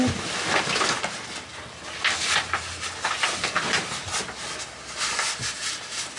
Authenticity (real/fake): real